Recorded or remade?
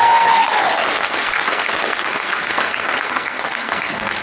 remade